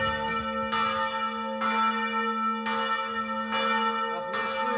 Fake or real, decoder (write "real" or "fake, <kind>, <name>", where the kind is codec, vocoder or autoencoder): real